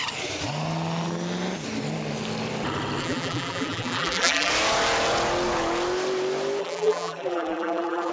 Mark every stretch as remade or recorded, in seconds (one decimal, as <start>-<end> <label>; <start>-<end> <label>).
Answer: 0.0-3.0 recorded; 3.0-4.5 remade; 4.5-6.6 recorded; 6.6-8.1 remade